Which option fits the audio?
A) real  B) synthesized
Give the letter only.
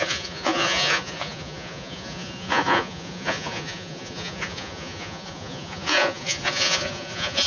B